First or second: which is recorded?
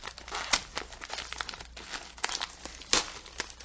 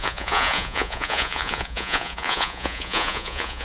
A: first